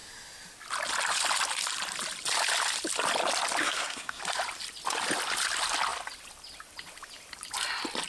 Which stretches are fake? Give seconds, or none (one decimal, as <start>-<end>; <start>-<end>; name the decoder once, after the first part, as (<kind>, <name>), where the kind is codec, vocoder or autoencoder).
3.6-4.2 (codec, SNAC)

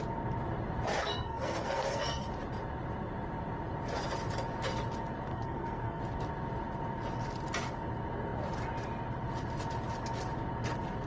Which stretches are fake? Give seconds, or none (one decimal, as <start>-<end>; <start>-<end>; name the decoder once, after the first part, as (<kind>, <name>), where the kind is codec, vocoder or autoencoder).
1.0-2.3 (codec, SNAC); 5.3-6.0

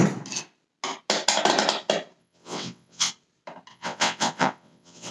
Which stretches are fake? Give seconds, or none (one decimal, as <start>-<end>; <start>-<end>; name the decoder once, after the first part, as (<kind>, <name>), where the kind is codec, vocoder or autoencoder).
2.2-3.1 (vocoder, WaveNeXt); 3.7-5.1